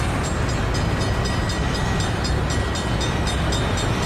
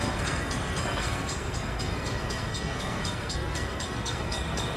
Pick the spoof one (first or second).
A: second